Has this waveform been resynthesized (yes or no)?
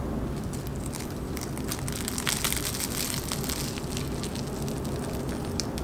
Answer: no